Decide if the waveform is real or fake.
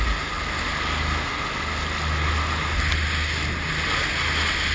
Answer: real